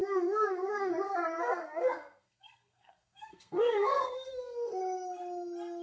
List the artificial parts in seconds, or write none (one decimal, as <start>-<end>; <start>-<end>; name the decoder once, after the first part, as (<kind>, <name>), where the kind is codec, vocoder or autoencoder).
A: 0.0-0.9 (codec, SNAC); 1.3-4.8